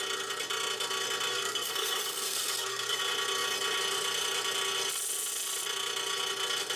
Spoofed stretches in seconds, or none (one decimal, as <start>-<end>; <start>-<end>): 1.3-3.0